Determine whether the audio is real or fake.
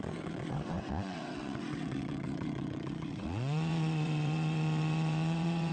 fake